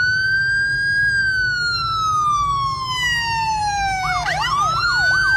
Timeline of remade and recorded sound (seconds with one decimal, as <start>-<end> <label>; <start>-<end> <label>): 0.0-5.4 recorded